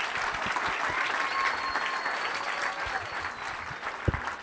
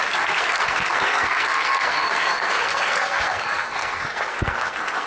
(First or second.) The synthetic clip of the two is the second